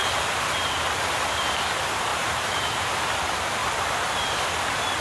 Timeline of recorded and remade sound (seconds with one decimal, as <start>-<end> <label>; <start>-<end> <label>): 0.0-2.1 recorded; 2.1-3.2 remade; 3.2-3.6 recorded; 3.6-4.5 remade; 4.5-5.0 recorded